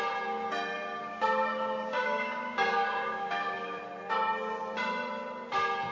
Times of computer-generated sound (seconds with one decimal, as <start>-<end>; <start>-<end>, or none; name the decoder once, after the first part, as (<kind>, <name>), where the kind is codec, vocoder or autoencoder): 1.0-3.8 (codec, DAC)